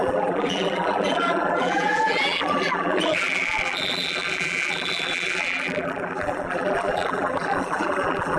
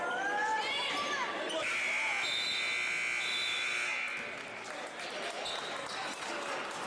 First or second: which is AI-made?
first